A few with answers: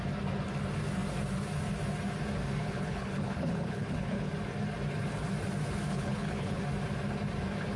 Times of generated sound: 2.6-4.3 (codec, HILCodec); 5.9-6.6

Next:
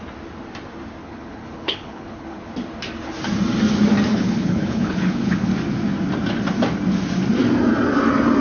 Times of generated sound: 1.0-2.5 (codec, HILCodec); 4.1-5.5

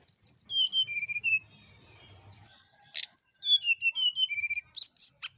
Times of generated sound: none

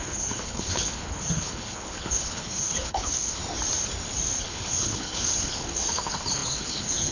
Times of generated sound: 0.0-3.4 (codec, HILCodec); 4.4-7.1

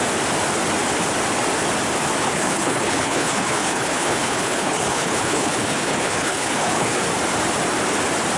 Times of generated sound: 2.2-7.0 (codec, HILCodec)